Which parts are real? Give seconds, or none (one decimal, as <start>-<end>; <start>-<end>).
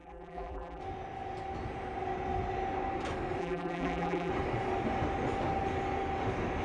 0.8-3.4; 4.3-6.6